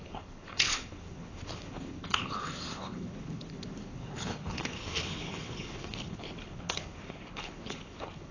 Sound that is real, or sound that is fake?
fake